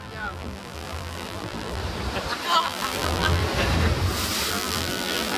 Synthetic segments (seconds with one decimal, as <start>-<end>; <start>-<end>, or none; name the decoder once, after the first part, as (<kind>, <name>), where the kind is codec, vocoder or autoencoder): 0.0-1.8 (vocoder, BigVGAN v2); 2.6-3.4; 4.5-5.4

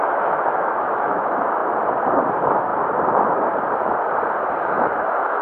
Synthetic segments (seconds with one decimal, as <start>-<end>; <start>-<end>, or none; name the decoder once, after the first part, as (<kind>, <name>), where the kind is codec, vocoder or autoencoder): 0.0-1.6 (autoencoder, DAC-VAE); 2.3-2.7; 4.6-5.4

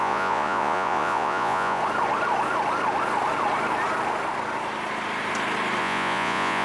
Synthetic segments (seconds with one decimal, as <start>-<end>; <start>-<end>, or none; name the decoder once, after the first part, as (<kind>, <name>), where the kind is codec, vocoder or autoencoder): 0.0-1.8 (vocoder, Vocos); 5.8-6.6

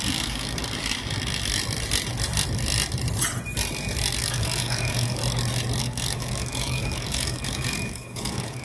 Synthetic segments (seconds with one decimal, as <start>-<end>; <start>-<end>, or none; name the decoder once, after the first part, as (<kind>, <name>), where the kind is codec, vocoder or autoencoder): 0.0-0.6 (codec, DAC); 4.2-5.2; 5.8-8.6

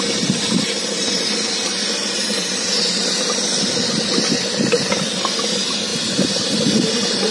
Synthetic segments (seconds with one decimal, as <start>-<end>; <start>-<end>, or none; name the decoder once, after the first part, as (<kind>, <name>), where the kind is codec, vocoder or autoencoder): none